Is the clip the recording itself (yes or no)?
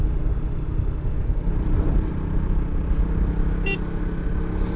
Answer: yes